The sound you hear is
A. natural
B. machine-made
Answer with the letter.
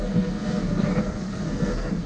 B